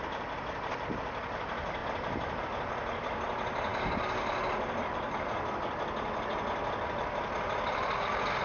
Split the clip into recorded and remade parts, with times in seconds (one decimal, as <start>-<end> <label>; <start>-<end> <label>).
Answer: 0.0-8.4 recorded